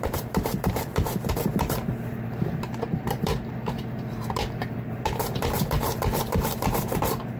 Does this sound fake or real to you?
fake